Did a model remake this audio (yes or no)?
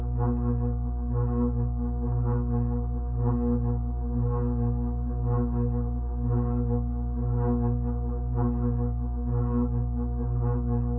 no